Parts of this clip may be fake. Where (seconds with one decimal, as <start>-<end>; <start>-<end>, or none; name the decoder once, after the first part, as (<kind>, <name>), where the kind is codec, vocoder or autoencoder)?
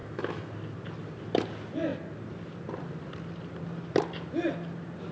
0.0-0.5 (autoencoder, DAC-VAE)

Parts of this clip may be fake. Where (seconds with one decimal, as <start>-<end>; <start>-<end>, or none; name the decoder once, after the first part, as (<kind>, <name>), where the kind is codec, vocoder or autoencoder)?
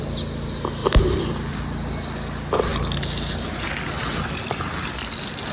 0.8-1.3 (vocoder, BigVGAN v2)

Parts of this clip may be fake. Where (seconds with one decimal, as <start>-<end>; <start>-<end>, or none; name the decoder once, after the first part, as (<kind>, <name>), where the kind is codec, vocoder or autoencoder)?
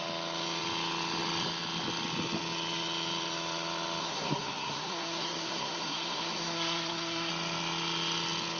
4.0-7.3 (codec, SNAC)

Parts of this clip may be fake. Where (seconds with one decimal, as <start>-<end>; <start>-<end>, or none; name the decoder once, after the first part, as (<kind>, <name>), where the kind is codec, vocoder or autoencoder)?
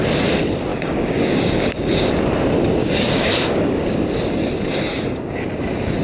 0.7-2.1 (codec, DAC); 2.8-4.0; 4.9-5.5